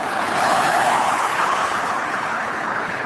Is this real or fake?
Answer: fake